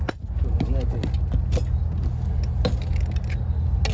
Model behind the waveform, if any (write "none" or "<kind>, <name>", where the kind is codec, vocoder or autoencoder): none